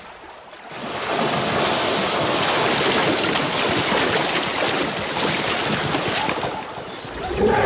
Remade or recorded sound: recorded